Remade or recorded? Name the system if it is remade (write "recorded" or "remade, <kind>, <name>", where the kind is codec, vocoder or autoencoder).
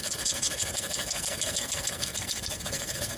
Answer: remade, codec, SNAC